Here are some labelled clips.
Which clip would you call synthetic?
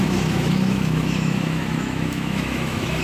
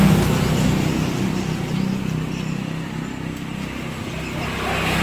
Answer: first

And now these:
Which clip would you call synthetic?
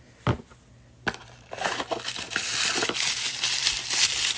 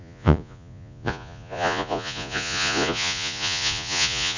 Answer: second